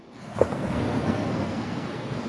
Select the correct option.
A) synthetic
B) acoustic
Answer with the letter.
A